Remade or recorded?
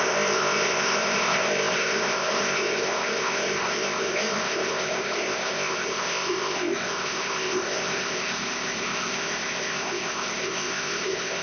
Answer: remade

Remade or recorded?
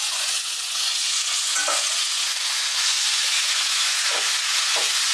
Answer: remade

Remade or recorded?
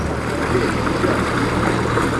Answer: recorded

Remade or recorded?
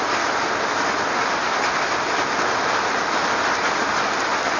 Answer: recorded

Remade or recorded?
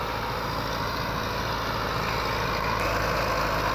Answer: recorded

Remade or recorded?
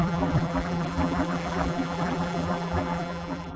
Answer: remade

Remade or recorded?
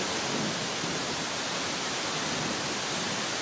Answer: recorded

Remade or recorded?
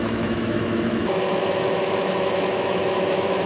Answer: remade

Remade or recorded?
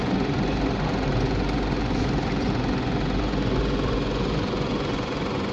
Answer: remade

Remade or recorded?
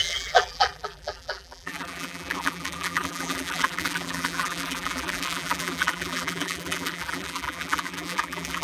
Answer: remade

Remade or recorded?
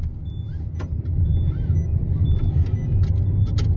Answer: recorded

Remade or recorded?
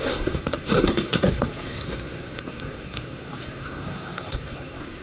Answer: remade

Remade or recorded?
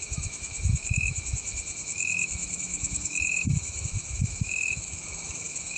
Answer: remade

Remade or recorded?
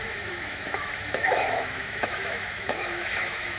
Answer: remade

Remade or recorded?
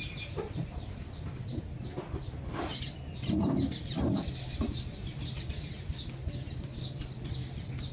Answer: recorded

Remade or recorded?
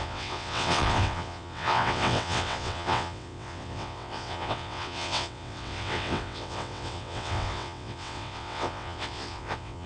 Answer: remade